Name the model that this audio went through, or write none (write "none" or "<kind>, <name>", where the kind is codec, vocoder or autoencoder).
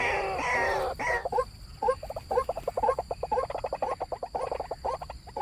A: none